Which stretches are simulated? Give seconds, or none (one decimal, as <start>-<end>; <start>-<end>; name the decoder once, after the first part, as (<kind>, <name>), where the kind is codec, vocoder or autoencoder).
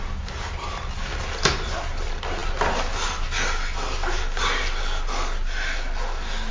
none